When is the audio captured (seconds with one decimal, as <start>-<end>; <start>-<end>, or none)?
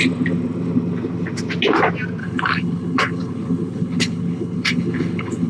0.0-2.2